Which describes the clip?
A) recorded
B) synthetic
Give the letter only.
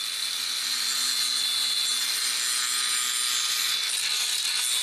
A